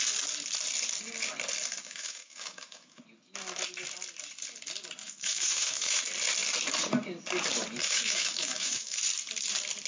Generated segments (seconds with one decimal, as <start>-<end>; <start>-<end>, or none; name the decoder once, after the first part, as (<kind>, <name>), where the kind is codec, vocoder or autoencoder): 1.7-3.0 (autoencoder, DAC-VAE); 5.0-6.0; 7.8-9.0